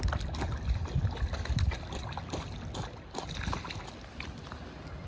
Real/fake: real